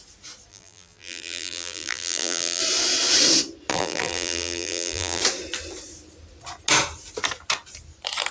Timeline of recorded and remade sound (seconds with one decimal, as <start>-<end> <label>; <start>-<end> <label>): 0.0-0.5 recorded; 0.5-2.6 remade; 2.6-3.7 recorded; 3.7-5.2 remade; 5.2-8.3 recorded